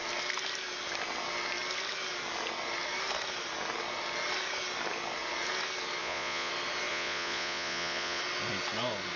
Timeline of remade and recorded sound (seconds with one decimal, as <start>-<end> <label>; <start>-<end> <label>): 0.0-6.0 recorded; 6.0-6.5 remade; 6.5-6.9 recorded; 6.9-8.2 remade; 8.2-9.2 recorded